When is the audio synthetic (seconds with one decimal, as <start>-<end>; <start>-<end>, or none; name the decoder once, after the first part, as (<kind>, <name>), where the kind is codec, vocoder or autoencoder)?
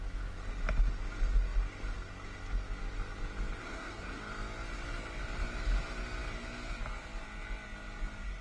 3.6-4.2 (codec, SNAC)